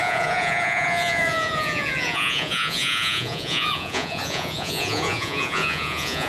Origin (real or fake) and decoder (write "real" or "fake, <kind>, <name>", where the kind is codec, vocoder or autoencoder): fake, vocoder, Vocos